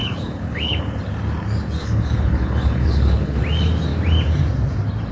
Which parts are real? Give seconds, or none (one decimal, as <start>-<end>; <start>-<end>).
0.8-1.8; 3.4-5.1